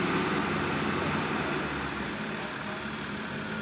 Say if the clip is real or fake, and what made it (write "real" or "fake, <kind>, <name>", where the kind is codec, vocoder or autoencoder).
real